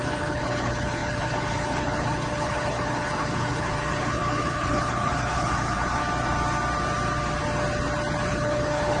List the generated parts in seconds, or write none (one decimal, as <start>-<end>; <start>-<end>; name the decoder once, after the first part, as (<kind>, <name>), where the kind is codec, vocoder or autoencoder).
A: 0.0-6.0 (codec, HILCodec); 8.3-9.0